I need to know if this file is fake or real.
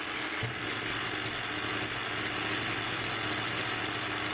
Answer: real